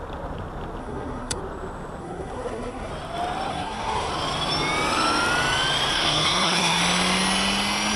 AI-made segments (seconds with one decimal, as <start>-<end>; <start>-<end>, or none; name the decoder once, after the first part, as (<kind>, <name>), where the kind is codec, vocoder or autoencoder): 0.8-1.4 (codec, SNAC); 2.0-2.9; 3.5-4.1; 5.9-6.8

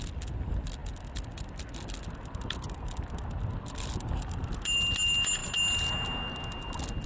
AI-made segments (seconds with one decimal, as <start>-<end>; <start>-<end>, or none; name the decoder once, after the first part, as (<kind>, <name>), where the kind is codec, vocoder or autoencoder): none

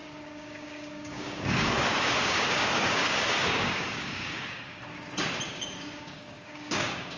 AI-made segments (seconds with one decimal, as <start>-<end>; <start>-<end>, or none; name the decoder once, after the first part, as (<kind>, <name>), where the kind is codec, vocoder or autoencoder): 0.0-4.8 (codec, DAC); 5.5-7.2

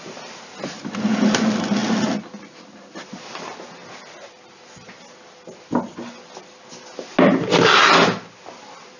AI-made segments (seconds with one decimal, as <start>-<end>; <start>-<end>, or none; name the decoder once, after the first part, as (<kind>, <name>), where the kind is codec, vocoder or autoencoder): none

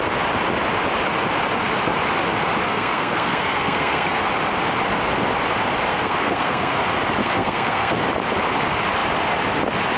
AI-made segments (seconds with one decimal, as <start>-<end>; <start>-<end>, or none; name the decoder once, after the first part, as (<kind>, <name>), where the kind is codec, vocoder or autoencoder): 2.7-4.3 (codec, SNAC); 5.9-6.8; 7.2-8.0

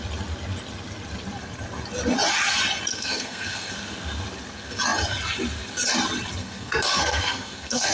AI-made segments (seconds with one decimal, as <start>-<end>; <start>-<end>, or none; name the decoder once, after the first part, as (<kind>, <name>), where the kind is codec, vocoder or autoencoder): 2.9-3.7 (codec, SNAC); 6.4-7.9

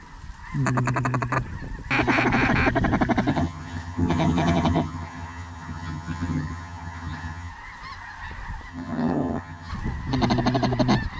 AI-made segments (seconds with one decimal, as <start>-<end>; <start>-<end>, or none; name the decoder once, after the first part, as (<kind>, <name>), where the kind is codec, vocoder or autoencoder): 3.3-7.5 (vocoder, HiFi-GAN); 8.7-9.7

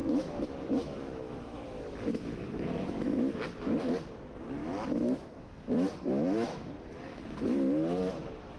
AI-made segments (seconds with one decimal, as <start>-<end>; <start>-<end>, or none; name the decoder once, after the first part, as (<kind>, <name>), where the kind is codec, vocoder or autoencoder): 0.0-3.9 (autoencoder, DAC-VAE); 4.6-8.6